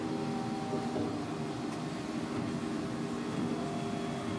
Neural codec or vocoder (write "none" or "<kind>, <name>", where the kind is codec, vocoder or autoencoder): none